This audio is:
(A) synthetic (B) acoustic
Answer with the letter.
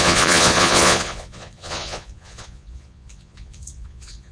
A